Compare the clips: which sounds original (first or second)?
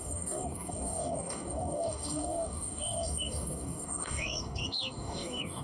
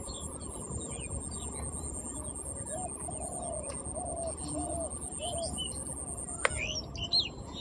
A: second